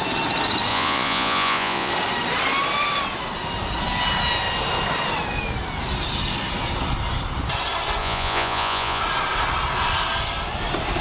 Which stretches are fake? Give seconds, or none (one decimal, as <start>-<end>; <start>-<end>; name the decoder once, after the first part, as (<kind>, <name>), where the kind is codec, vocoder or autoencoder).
0.7-1.9 (vocoder, Vocos); 8.0-9.0